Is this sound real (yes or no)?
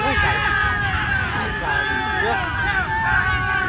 yes